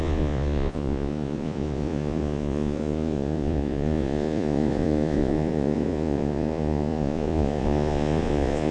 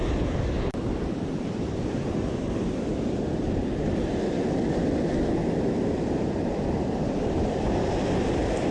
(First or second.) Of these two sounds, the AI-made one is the first